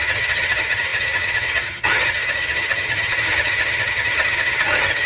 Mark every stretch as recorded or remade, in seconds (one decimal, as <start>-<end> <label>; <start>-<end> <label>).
0.0-5.1 remade